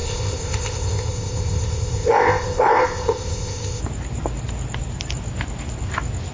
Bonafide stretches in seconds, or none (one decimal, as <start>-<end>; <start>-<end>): 3.8-6.3